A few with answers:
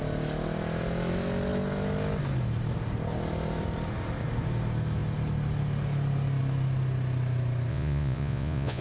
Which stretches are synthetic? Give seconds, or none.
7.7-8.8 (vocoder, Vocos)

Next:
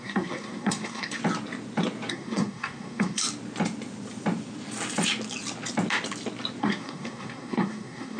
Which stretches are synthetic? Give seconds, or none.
0.0-1.2 (codec, SNAC); 2.1-3.2; 6.6-8.2

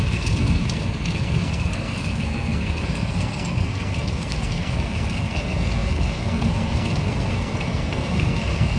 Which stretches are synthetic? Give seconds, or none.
0.0-8.8 (codec, SNAC)

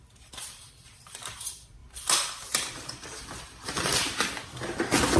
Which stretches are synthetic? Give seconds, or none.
none

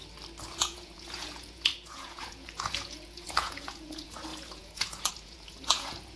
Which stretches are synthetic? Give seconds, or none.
0.6-6.2 (vocoder, Vocos)

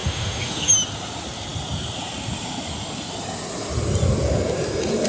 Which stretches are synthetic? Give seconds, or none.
0.0-0.7 (autoencoder, DAC-VAE)